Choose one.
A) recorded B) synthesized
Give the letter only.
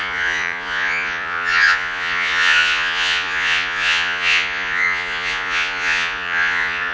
B